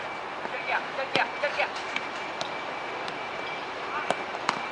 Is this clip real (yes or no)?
yes